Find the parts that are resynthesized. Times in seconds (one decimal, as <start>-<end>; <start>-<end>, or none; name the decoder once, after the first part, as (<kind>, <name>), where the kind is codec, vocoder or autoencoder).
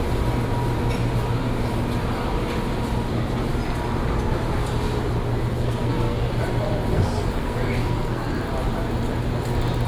5.5-6.3 (codec, SNAC); 6.9-8.3